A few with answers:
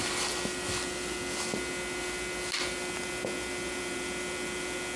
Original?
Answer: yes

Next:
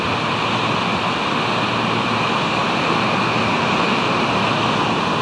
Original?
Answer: yes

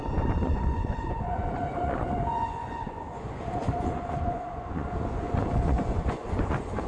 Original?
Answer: no